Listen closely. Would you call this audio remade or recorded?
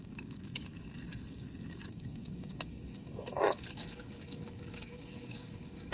remade